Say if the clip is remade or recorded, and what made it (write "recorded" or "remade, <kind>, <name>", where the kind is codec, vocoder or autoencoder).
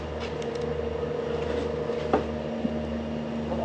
recorded